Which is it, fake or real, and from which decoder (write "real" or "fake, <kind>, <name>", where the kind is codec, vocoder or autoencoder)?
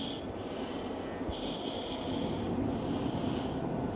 real